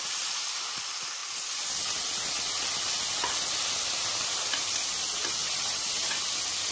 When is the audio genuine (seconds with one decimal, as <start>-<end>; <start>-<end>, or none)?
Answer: 0.0-5.4; 6.2-6.7